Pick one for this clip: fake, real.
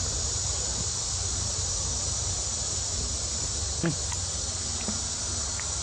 real